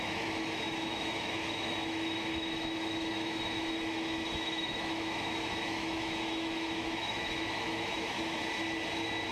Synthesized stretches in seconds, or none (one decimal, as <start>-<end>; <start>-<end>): 0.0-8.4